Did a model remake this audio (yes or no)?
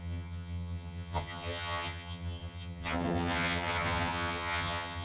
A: yes